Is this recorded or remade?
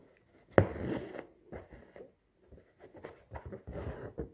recorded